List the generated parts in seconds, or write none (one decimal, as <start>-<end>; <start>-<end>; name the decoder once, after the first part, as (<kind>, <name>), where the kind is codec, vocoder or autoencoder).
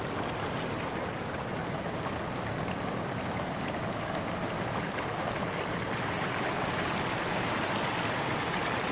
none